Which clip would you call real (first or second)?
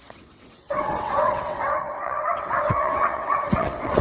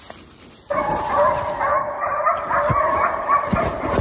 second